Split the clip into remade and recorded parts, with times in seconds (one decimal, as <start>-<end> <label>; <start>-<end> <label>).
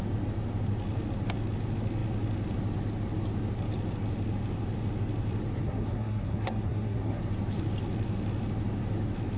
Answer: 0.0-5.6 recorded; 5.6-7.2 remade; 7.2-9.4 recorded